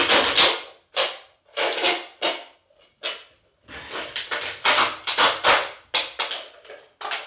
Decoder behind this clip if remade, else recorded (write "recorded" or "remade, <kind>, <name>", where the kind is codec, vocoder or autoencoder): recorded